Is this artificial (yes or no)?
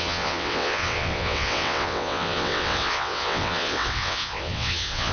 yes